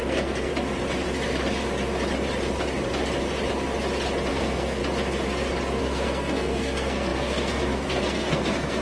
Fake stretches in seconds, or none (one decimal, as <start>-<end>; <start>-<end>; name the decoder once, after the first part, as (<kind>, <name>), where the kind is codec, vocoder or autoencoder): 0.0-0.5 (codec, SNAC); 4.3-4.8; 5.8-8.8